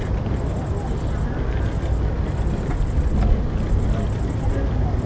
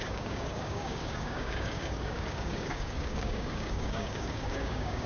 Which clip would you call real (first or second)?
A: first